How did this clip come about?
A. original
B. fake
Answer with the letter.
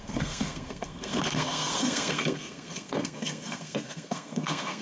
B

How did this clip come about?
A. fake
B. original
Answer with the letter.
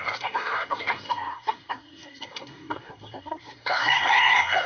A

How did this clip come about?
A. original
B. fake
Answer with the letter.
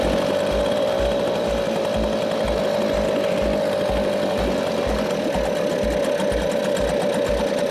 A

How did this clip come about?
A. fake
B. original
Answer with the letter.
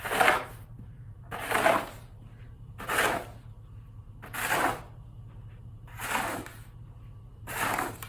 A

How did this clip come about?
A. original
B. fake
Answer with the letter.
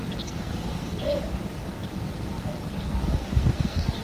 B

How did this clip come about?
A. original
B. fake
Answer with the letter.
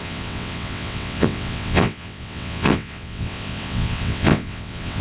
B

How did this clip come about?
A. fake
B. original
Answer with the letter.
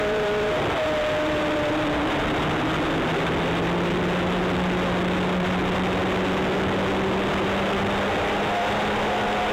B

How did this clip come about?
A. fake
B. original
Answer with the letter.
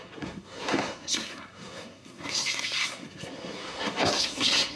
A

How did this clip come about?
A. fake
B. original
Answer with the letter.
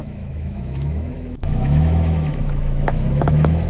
A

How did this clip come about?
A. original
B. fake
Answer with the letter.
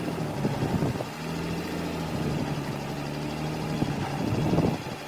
A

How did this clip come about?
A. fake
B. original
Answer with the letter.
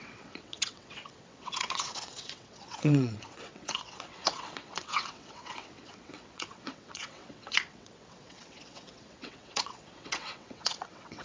A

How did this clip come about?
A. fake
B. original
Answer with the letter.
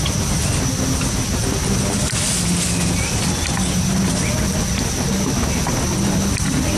B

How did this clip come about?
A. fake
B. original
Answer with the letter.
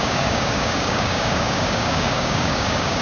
A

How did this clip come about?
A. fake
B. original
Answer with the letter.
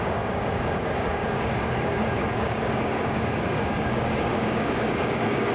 A